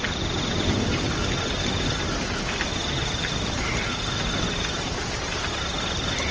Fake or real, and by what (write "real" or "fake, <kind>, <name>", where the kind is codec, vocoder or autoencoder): real